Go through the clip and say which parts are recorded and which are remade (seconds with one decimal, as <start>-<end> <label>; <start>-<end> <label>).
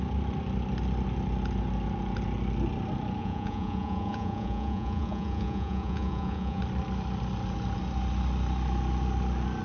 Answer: 0.0-3.2 recorded; 3.2-6.6 remade; 6.6-9.6 recorded